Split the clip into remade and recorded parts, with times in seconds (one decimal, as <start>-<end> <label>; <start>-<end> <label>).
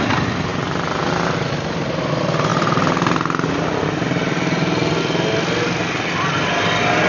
0.0-7.1 recorded